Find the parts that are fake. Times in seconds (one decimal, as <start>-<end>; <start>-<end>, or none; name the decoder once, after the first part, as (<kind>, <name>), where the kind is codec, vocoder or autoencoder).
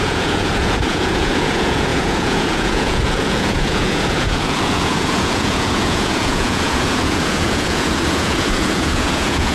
0.0-9.5 (vocoder, Vocos)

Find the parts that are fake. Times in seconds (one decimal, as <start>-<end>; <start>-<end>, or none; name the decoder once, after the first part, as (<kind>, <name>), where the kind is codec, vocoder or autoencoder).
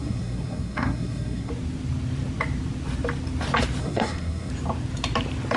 0.0-1.5 (codec, SNAC); 3.8-4.5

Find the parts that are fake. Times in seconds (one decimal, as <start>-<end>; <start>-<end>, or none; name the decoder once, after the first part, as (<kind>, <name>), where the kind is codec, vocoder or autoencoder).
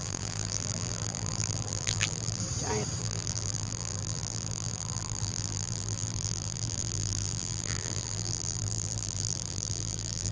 0.0-2.4 (vocoder, BigVGAN v2); 3.0-10.3